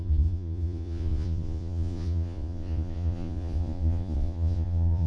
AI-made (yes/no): yes